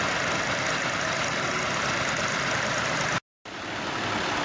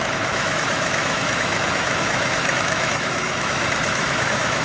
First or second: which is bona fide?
first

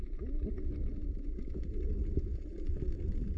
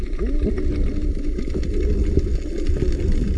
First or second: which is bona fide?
second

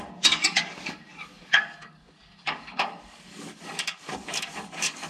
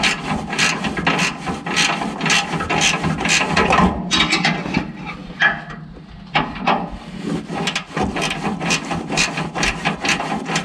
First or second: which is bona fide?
second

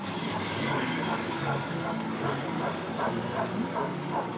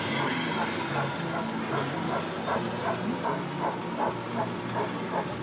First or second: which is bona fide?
second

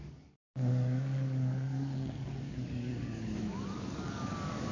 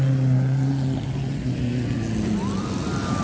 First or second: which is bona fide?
second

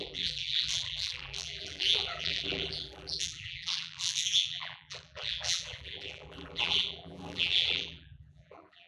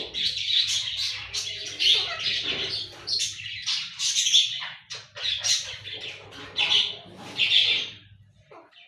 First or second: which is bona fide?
second